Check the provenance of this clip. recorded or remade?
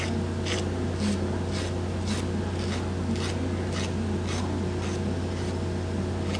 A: recorded